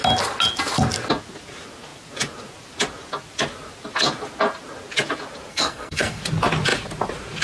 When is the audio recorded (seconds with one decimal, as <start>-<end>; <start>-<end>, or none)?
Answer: 0.0-5.5; 6.2-7.4